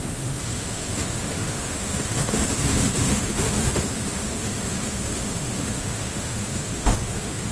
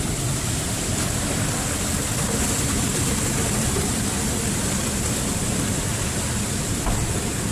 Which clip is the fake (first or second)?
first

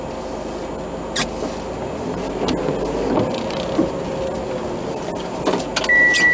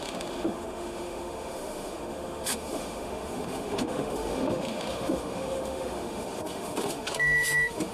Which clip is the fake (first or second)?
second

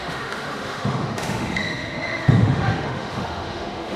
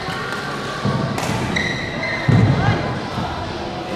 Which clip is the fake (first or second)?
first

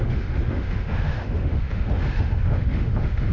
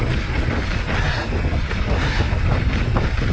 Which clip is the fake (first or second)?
first